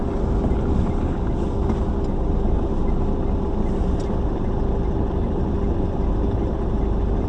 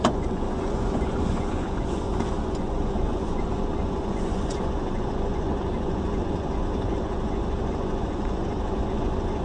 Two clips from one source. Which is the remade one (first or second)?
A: second